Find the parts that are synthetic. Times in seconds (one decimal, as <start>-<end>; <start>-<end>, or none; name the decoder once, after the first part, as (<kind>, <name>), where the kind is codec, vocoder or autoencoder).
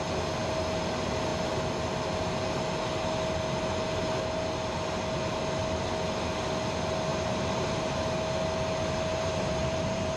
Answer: 7.1-7.9 (vocoder, BigVGAN v2); 9.1-10.2